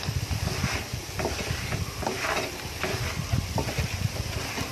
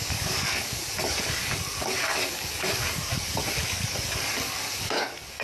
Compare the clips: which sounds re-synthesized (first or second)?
second